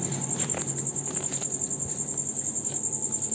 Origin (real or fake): real